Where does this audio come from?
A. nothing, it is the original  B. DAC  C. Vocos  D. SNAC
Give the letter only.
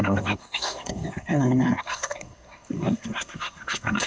D